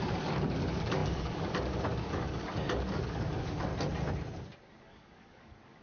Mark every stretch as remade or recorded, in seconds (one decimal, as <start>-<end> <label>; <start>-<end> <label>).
0.0-3.7 remade; 3.7-4.8 recorded; 4.8-5.8 remade